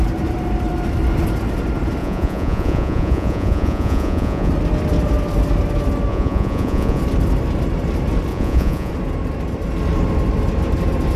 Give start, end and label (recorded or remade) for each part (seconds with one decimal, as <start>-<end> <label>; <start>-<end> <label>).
0.0-2.0 recorded; 2.0-4.5 remade; 4.5-6.1 recorded; 6.1-7.0 remade; 7.0-8.3 recorded; 8.3-8.9 remade; 8.9-11.2 recorded